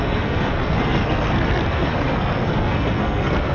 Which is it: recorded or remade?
remade